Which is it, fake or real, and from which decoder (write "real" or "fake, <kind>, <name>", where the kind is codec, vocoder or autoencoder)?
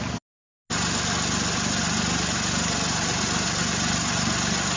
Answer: real